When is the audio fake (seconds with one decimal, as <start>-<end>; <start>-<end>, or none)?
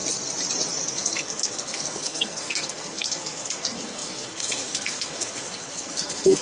0.9-6.4